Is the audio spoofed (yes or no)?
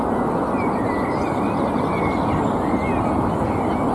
no